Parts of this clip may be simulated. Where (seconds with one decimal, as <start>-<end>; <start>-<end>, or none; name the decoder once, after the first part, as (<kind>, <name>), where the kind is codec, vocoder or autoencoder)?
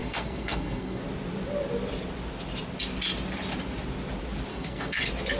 0.0-1.0 (codec, SNAC); 4.5-5.0